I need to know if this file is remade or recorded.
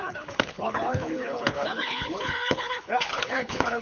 remade